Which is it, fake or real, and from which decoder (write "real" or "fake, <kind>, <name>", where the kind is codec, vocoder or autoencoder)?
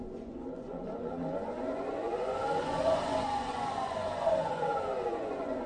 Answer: fake, vocoder, Vocos